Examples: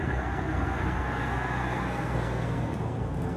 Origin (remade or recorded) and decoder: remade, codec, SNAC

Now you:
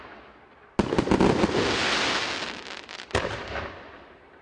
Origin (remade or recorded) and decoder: recorded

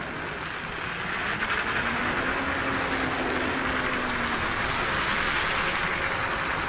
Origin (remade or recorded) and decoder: recorded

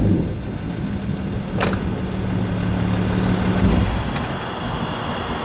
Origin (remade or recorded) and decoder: recorded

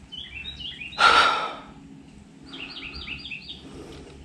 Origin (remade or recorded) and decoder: recorded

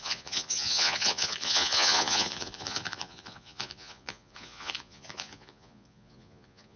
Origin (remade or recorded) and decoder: remade, vocoder, Vocos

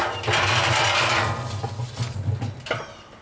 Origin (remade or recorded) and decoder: recorded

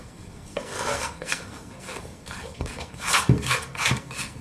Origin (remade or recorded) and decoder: remade, codec, SNAC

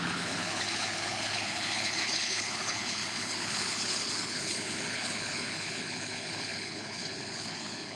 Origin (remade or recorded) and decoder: remade, codec, HILCodec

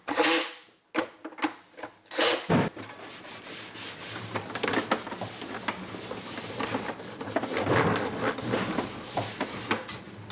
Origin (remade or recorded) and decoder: recorded